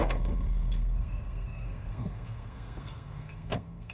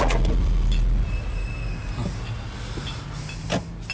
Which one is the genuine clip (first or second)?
second